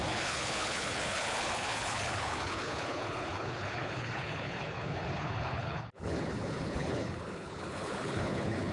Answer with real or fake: fake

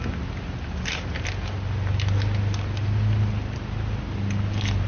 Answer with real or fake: real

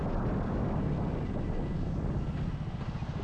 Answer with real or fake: real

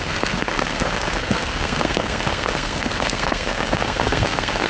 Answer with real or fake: fake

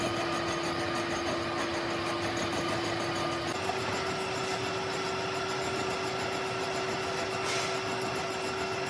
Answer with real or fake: real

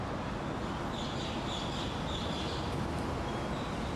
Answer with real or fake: real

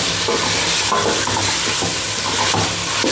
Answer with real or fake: real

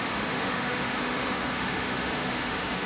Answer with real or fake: fake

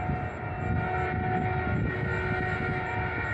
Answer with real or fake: real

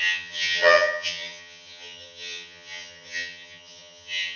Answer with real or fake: fake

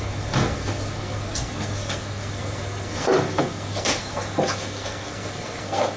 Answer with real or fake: fake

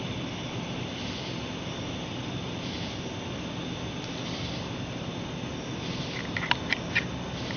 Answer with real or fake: real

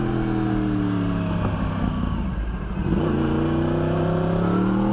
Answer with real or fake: real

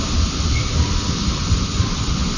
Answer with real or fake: real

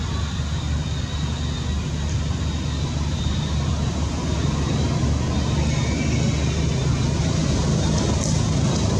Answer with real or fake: real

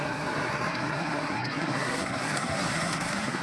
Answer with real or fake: fake